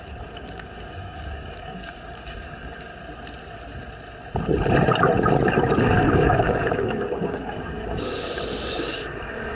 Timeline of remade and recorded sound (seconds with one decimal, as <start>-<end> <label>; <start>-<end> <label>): 0.0-2.9 remade; 2.9-5.8 recorded; 5.8-9.6 remade